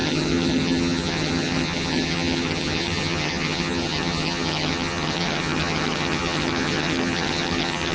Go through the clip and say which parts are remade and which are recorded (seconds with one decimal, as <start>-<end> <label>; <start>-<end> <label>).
0.0-7.9 remade